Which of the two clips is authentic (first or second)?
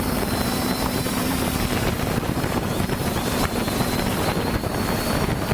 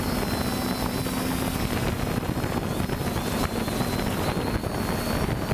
second